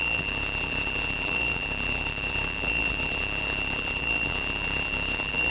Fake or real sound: fake